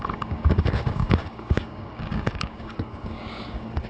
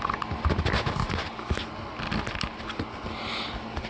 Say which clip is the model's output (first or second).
first